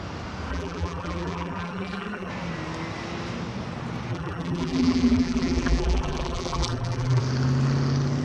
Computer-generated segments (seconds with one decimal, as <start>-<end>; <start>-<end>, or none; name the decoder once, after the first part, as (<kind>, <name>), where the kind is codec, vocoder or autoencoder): 0.5-2.3 (vocoder, BigVGAN v2); 4.1-7.2